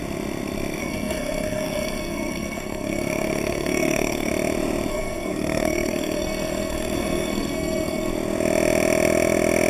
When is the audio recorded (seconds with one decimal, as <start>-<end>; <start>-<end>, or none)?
0.0-0.8; 4.3-4.9; 8.1-9.7

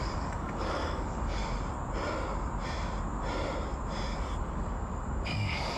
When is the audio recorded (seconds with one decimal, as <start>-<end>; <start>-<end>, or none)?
1.4-4.4

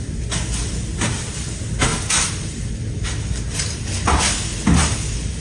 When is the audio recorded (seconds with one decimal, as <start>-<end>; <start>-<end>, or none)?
0.0-5.4

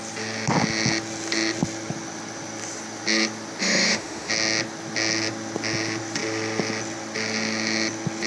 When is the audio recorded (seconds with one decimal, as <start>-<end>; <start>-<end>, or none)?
0.0-3.6; 4.3-8.3

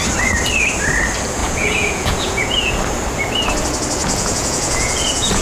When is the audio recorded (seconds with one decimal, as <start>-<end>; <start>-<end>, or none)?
0.0-1.4; 2.7-4.0

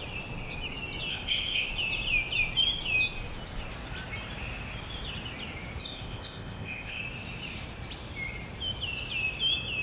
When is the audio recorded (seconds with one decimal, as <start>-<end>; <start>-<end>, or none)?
0.0-1.1; 1.7-5.8; 7.0-9.8